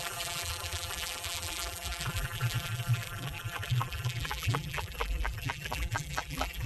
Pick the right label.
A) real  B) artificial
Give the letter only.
B